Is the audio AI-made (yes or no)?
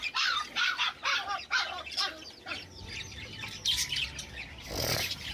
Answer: no